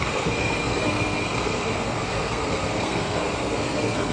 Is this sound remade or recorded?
remade